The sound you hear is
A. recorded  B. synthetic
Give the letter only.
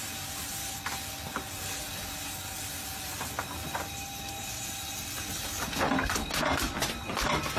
A